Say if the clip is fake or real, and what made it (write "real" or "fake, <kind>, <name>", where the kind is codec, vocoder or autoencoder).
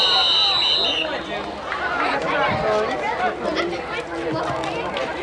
real